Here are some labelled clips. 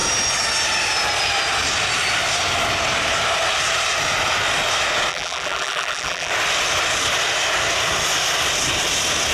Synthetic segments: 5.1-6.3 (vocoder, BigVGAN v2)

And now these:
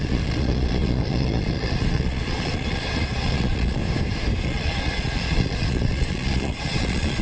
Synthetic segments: 0.0-3.8 (vocoder, Vocos); 4.4-7.2

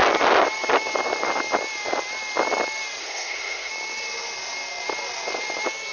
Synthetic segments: 3.0-3.7 (codec, SNAC)

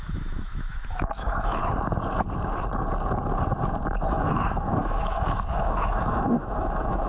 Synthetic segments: 0.0-1.6 (autoencoder, DAC-VAE); 4.1-7.1

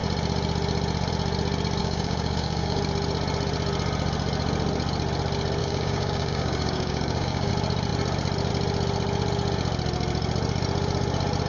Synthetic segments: 1.8-2.8 (codec, DAC); 5.6-7.5

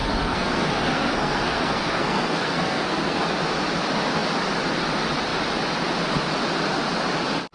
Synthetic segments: 0.0-3.4 (codec, SNAC)

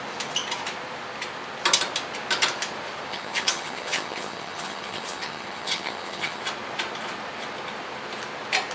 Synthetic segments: 3.1-6.4 (vocoder, HiFi-GAN)

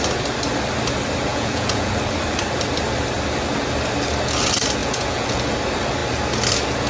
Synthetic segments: 1.3-1.9 (vocoder, Vocos); 4.8-5.4